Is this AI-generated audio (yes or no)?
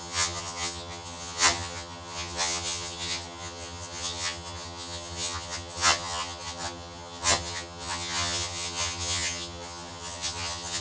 yes